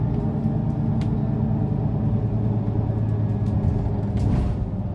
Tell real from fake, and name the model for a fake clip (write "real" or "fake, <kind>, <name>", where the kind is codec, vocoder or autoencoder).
real